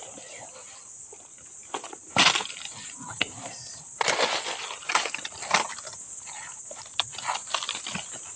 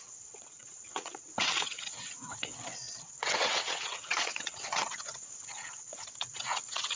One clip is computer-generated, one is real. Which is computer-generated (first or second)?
second